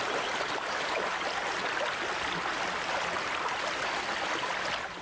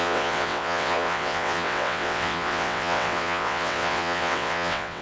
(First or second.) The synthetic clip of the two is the second